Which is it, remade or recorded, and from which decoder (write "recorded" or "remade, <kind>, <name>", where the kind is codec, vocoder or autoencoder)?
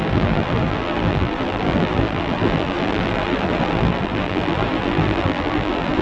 remade, vocoder, BigVGAN v2